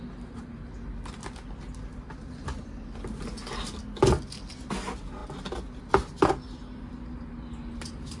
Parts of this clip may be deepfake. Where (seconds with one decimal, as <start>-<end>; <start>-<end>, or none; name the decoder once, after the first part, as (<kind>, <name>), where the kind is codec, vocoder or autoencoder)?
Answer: none